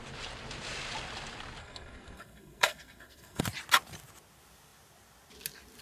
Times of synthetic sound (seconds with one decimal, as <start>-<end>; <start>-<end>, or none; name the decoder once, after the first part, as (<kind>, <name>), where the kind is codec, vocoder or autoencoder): 1.6-3.4 (codec, SNAC)